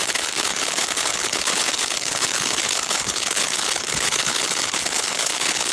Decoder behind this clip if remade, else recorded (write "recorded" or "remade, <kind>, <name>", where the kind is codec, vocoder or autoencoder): remade, codec, HILCodec